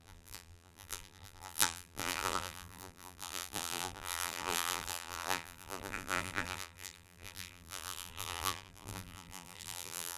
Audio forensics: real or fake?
fake